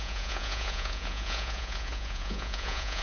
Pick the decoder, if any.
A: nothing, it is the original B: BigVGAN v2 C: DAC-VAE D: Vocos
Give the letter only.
D